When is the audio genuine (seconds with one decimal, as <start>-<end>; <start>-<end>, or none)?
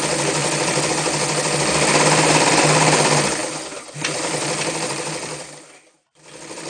0.0-0.4; 0.9-3.4